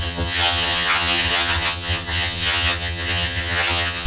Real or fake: fake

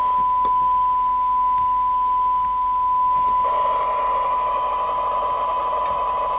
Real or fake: real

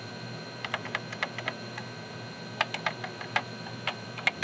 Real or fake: real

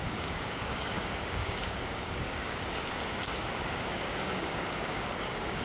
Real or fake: fake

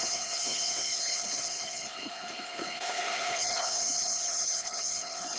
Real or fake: fake